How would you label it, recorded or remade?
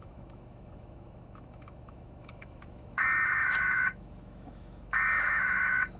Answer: remade